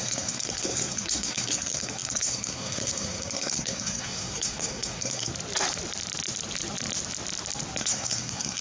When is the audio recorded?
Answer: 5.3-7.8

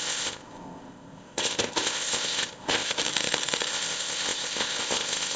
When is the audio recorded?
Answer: 3.0-3.7

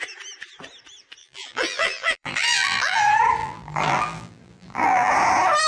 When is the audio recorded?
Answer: 0.0-1.2; 3.0-3.4; 5.1-5.7

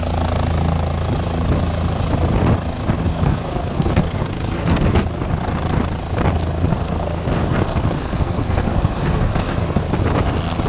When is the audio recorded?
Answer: 0.0-3.1; 5.3-6.7; 9.8-10.7